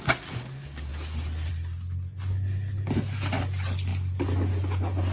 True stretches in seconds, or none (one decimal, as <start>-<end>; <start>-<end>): 0.0-5.1